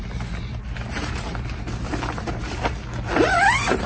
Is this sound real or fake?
real